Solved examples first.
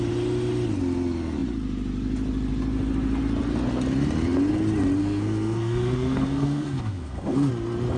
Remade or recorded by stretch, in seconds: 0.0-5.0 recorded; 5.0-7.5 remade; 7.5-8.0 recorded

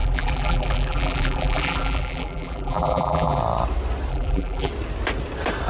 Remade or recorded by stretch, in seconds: 0.0-3.4 remade; 3.4-4.1 recorded; 4.1-4.7 remade; 4.7-5.7 recorded

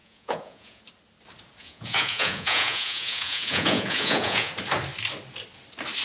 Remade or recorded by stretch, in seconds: 0.0-0.8 remade; 0.8-1.6 recorded; 1.6-4.5 remade; 4.5-6.0 recorded

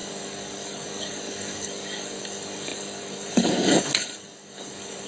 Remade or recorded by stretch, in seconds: 0.0-5.1 remade

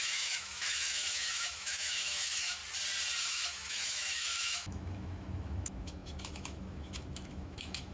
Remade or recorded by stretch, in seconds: 0.0-2.6 remade; 2.6-3.2 recorded; 3.2-7.9 remade

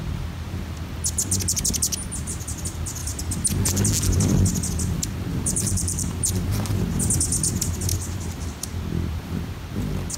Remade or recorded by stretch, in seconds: 0.0-5.3 recorded; 5.3-6.7 remade; 6.7-10.2 recorded

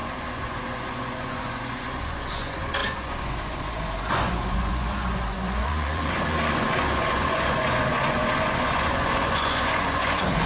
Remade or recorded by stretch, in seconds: 0.0-10.5 remade

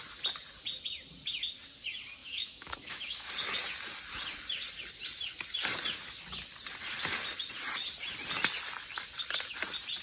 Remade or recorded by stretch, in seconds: 0.0-2.2 recorded; 2.2-3.3 remade; 3.3-10.0 recorded